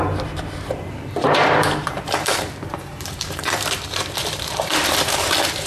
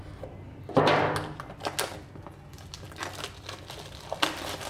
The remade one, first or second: first